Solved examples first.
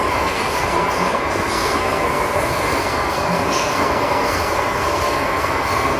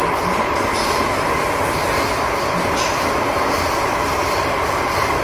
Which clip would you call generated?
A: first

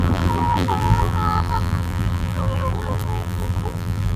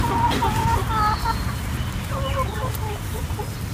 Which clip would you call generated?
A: first